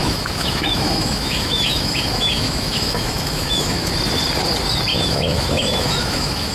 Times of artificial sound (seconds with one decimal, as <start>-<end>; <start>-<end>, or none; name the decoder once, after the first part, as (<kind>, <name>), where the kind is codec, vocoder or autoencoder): 0.0-3.9 (autoencoder, DAC-VAE); 4.9-6.5